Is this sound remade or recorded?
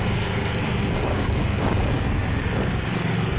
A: remade